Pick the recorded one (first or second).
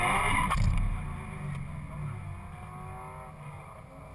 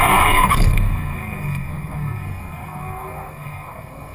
first